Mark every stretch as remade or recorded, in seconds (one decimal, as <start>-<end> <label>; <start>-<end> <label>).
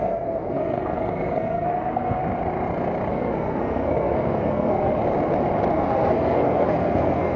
0.0-2.2 remade; 2.2-3.1 recorded; 3.1-5.0 remade; 5.0-5.7 recorded; 5.7-7.4 remade